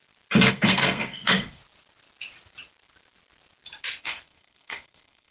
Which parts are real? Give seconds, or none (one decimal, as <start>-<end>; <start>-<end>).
0.0-0.5; 1.6-4.0